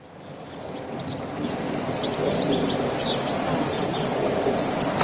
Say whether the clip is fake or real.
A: real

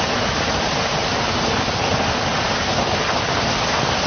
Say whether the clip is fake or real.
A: real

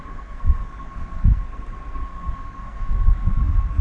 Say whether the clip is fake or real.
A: fake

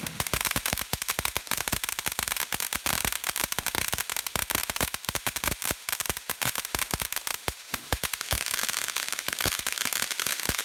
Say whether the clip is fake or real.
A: fake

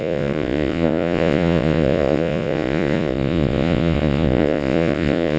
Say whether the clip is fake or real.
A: fake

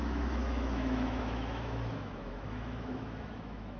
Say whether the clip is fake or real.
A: fake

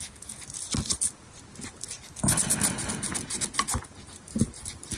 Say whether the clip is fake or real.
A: real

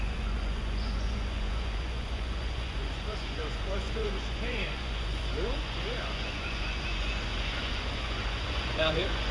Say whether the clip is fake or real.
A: fake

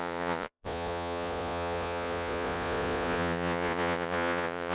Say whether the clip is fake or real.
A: fake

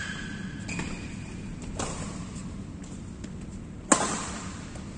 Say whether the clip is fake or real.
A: real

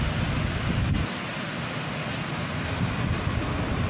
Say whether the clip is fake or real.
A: real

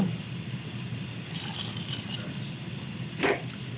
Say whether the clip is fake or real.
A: real